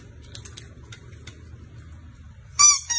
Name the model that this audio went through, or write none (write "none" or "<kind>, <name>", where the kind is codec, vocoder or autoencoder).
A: none